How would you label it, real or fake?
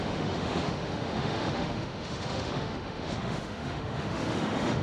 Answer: fake